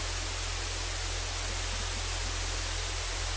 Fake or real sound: real